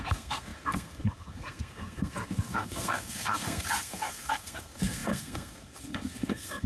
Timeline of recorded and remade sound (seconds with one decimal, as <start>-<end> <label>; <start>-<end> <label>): 0.0-6.7 remade